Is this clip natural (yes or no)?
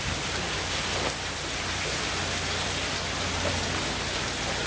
yes